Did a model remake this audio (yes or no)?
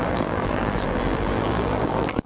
yes